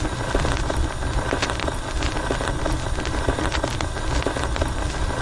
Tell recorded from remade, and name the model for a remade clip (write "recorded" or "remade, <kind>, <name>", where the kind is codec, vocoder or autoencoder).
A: recorded